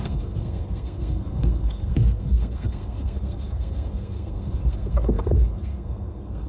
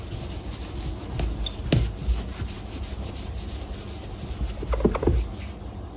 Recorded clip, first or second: second